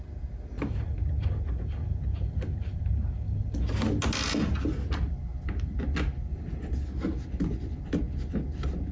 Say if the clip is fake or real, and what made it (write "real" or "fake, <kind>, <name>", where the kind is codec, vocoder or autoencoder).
real